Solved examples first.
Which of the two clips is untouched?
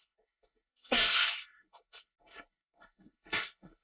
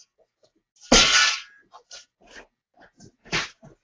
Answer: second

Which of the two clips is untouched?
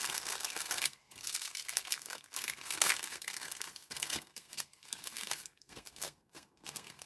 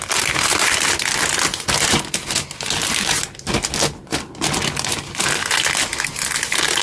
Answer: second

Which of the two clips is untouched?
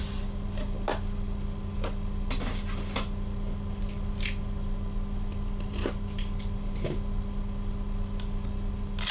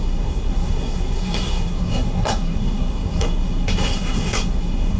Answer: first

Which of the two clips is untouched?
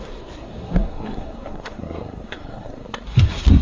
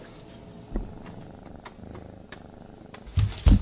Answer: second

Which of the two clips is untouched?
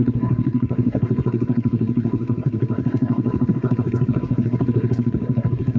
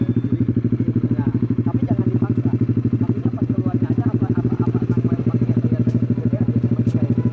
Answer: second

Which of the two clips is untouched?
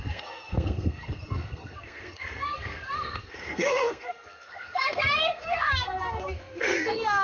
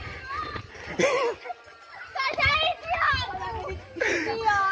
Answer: second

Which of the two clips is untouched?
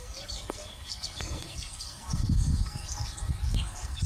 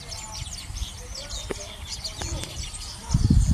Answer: second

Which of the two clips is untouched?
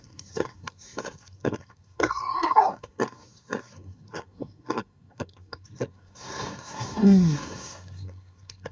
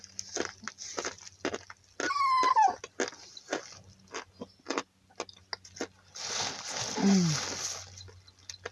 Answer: second